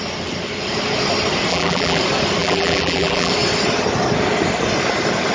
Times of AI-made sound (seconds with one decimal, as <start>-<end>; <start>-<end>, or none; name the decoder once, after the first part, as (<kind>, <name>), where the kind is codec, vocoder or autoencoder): 1.5-2.0 (vocoder, BigVGAN v2); 2.4-3.3